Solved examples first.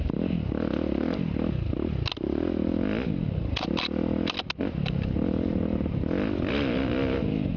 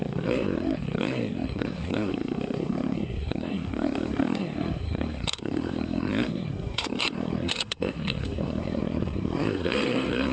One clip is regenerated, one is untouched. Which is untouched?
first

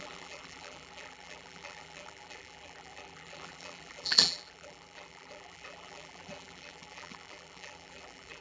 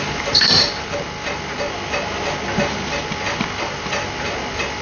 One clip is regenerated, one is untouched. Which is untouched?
second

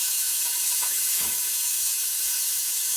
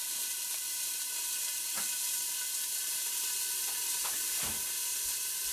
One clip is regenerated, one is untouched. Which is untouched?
second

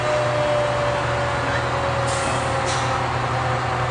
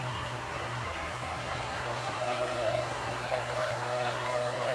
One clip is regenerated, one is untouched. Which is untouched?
first